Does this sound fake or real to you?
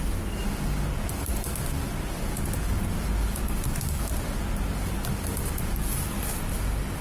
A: real